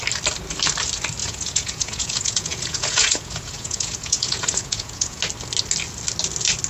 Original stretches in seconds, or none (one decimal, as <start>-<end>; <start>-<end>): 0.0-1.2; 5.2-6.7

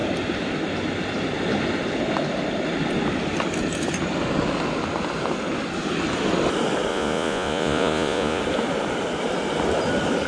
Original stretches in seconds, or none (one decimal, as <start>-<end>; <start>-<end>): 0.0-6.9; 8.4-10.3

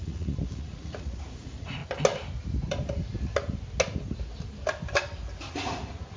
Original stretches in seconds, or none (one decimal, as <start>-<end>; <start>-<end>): 1.8-5.5

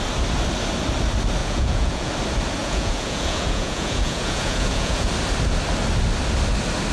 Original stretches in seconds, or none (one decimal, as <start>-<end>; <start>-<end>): 0.0-1.4; 2.1-2.6; 5.1-6.9

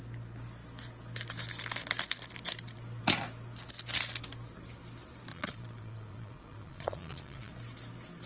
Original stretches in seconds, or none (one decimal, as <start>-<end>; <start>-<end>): 0.0-5.3; 7.5-8.3

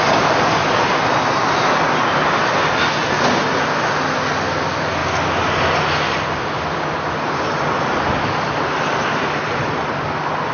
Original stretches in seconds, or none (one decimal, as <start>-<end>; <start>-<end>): 0.0-10.5

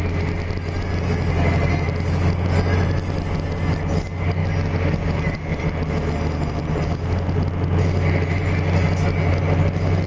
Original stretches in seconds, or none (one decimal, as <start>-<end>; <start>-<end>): 0.0-10.1

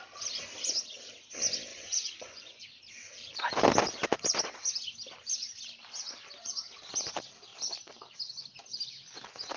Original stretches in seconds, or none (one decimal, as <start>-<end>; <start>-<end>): 0.0-1.7; 2.8-9.6